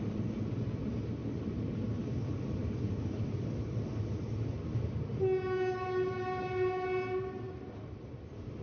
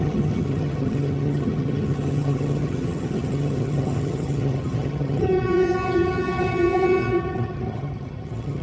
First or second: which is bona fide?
first